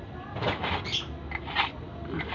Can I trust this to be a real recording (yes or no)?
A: yes